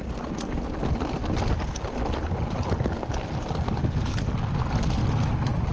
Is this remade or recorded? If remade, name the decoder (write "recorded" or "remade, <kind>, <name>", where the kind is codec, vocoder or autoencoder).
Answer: recorded